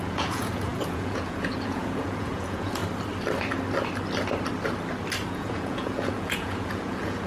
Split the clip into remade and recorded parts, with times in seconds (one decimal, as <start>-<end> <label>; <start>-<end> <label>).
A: 0.0-2.8 remade; 2.8-5.3 recorded; 5.3-7.3 remade

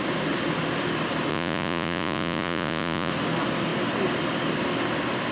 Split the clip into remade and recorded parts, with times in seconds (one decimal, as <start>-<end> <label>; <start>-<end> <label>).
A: 0.0-1.3 recorded; 1.3-3.1 remade; 3.1-5.3 recorded

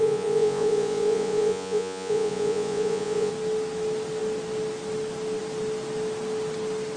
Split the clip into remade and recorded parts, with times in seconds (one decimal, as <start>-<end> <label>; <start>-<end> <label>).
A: 0.0-3.3 remade; 3.3-7.0 recorded

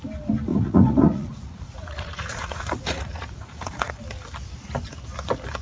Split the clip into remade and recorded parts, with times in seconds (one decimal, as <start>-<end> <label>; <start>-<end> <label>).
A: 0.0-0.5 recorded; 0.5-3.9 remade; 3.9-5.6 recorded